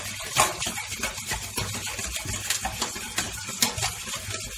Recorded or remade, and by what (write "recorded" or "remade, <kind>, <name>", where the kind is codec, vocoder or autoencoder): recorded